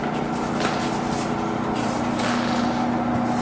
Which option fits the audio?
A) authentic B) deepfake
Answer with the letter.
A